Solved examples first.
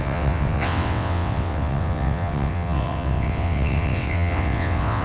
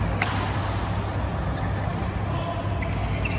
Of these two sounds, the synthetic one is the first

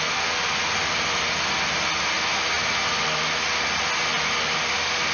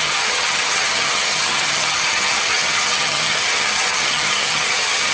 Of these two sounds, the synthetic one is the second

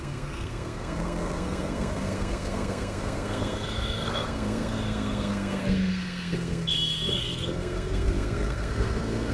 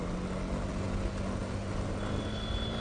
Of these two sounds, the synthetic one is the first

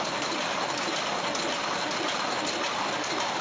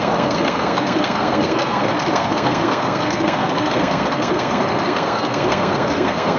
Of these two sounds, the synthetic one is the second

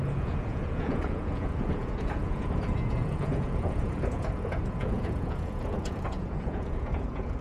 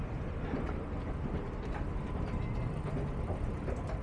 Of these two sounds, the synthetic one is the first